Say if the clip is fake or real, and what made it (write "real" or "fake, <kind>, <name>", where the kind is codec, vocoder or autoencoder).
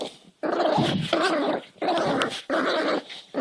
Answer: real